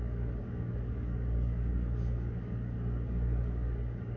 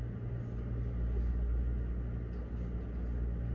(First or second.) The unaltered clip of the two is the second